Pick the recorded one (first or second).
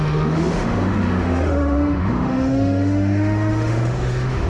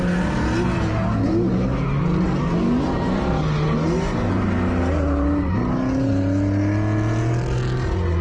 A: second